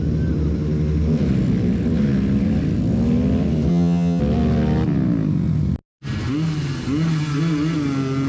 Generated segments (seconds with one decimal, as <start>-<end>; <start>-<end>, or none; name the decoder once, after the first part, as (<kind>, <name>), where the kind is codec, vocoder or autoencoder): 3.7-4.2 (vocoder, HiFi-GAN)